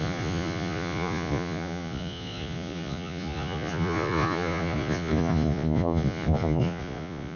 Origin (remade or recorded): remade